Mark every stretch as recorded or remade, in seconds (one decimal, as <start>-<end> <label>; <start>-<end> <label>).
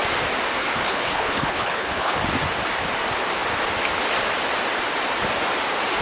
0.0-0.6 recorded; 0.6-2.2 remade; 2.2-6.0 recorded